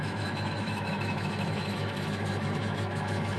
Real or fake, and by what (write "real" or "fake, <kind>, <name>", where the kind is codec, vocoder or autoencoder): fake, autoencoder, DAC-VAE